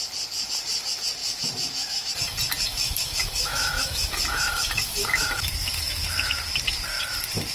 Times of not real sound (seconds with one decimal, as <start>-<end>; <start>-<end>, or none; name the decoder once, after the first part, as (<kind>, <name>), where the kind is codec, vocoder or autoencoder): 1.2-2.1 (autoencoder, DAC-VAE); 2.7-6.4